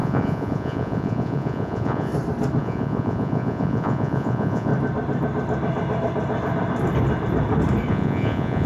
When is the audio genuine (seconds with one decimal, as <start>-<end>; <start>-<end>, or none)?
2.1-2.6; 4.7-7.9